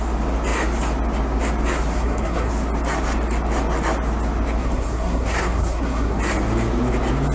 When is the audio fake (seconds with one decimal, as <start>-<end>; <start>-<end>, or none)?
1.9-2.5; 4.6-6.2